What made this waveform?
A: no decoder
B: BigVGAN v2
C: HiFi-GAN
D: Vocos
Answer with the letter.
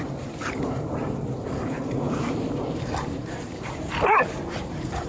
B